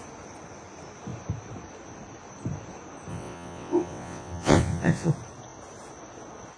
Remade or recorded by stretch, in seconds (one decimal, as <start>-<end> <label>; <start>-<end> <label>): 0.0-3.1 recorded; 3.1-5.1 remade; 5.1-6.6 recorded